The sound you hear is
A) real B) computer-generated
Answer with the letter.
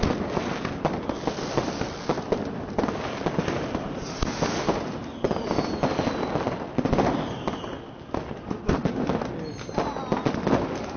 A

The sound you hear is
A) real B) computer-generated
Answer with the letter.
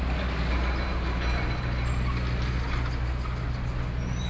A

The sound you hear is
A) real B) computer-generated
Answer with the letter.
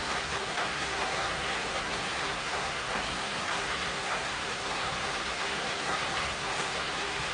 B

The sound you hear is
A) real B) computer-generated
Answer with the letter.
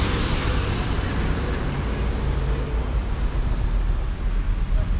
B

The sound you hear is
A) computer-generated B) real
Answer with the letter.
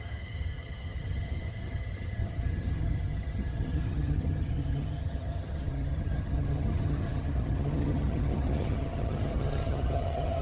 A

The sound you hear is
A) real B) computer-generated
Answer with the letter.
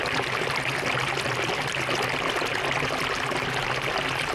A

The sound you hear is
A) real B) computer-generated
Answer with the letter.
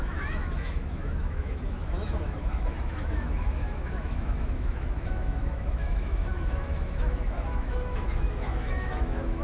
B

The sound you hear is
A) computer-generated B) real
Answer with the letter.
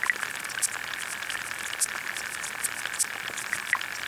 B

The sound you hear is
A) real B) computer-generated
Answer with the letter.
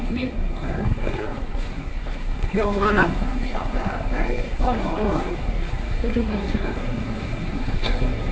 B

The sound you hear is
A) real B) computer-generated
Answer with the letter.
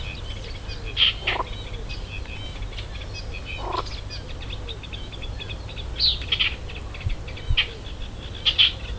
A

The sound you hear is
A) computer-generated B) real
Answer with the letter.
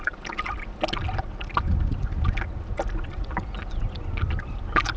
B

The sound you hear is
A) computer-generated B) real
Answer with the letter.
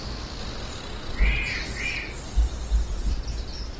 B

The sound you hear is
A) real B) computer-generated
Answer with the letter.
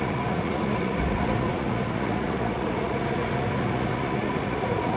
B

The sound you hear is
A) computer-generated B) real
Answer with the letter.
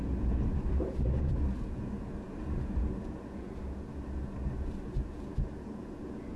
A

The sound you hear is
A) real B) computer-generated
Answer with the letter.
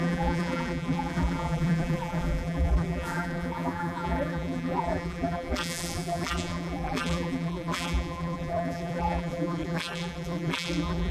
B